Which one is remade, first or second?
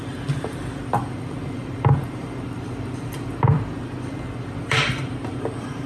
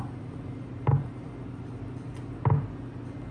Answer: first